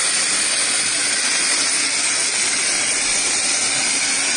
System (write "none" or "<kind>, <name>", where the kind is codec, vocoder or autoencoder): none